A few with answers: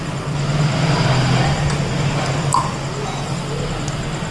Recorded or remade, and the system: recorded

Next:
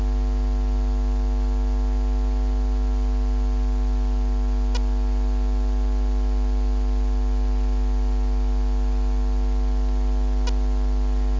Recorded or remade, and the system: recorded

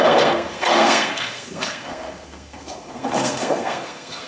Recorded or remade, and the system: remade, codec, SNAC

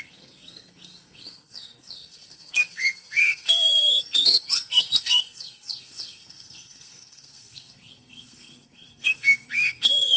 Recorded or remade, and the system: remade, codec, SNAC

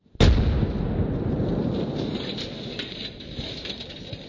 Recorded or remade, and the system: recorded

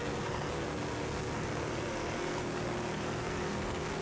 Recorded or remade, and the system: remade, codec, SNAC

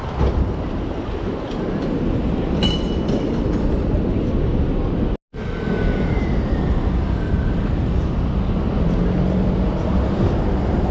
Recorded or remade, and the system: recorded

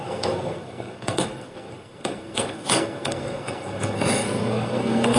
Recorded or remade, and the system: remade, codec, SNAC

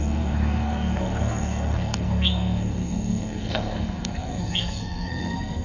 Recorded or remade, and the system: remade, codec, SNAC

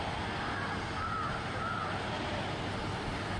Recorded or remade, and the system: recorded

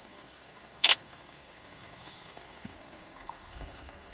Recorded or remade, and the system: remade, codec, SNAC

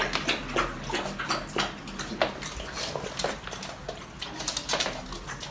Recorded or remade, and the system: recorded